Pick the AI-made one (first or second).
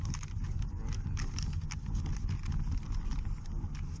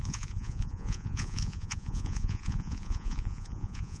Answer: second